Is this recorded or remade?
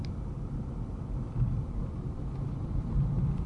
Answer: recorded